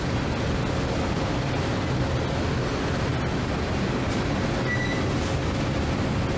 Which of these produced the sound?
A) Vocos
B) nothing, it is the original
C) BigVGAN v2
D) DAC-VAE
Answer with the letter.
B